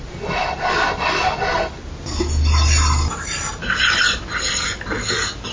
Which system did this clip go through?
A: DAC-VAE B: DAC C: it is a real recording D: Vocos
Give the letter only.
C